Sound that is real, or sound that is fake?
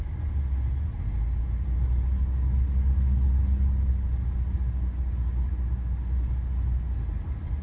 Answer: real